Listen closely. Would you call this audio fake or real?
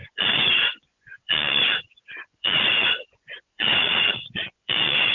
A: fake